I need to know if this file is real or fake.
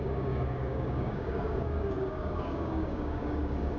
fake